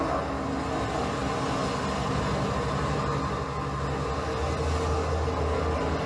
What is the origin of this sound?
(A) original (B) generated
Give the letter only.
A